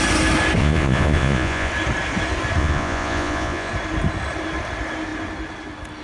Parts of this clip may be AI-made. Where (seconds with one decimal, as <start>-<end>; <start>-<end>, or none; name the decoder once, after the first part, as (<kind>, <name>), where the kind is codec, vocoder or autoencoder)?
0.6-1.7 (vocoder, Vocos); 2.6-3.7